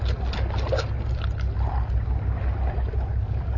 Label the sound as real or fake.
real